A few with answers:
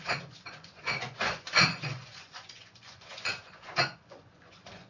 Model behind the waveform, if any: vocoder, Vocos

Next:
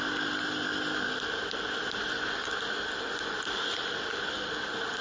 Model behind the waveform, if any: none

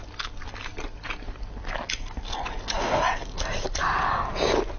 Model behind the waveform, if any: none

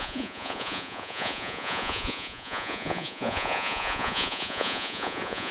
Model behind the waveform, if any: vocoder, Vocos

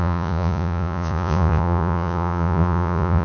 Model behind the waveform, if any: vocoder, Vocos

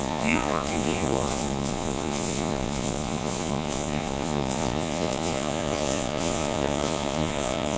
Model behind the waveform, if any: vocoder, Vocos